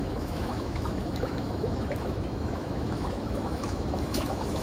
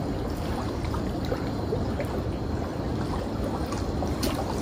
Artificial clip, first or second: first